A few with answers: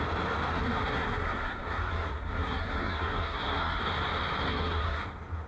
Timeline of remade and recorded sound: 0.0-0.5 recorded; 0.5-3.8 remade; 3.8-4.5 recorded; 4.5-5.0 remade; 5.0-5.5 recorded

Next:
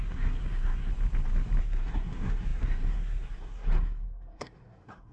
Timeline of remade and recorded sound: 0.0-0.9 remade; 0.9-1.6 recorded; 1.6-5.1 remade

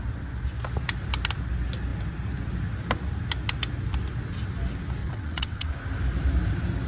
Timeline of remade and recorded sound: 0.0-5.0 recorded; 5.0-5.7 remade; 5.7-6.9 recorded